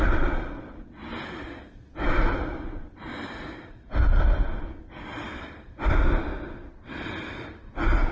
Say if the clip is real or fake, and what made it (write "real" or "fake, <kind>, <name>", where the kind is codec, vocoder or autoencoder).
real